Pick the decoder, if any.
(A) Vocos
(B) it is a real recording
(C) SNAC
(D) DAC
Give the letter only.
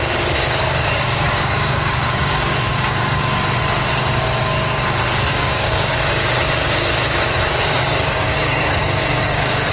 D